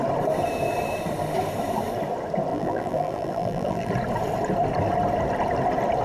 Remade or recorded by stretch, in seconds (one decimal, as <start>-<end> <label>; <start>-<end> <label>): 0.0-2.5 recorded; 2.5-3.9 remade; 3.9-6.0 recorded